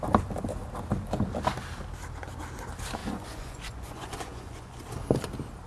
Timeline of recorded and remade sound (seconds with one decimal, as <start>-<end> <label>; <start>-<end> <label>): 0.0-3.0 recorded; 3.0-4.8 remade; 4.8-5.7 recorded